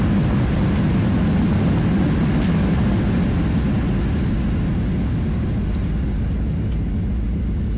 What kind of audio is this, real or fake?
real